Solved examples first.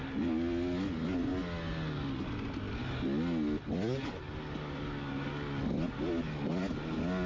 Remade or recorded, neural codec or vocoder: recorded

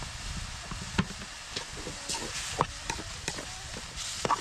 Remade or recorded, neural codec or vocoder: recorded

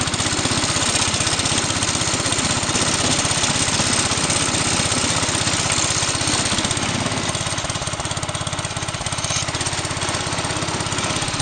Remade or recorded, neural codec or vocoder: recorded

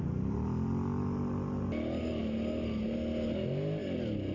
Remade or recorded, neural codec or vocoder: recorded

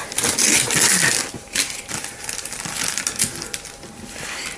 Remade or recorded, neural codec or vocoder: recorded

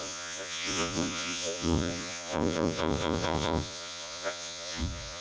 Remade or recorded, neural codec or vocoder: remade, vocoder, Vocos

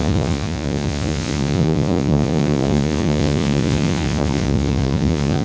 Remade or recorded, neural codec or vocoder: remade, vocoder, Vocos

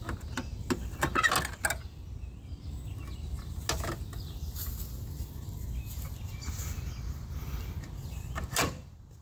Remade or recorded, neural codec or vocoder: recorded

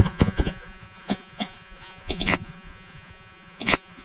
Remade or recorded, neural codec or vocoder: remade, vocoder, Vocos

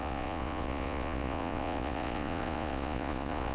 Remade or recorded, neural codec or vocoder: remade, vocoder, Vocos